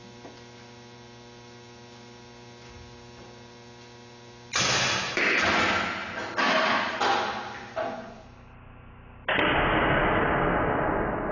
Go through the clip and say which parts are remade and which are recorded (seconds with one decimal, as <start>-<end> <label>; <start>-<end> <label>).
0.0-11.3 recorded